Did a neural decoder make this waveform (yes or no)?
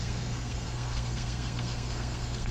yes